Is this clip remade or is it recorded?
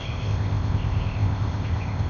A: remade